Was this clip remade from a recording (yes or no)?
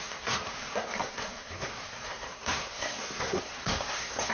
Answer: yes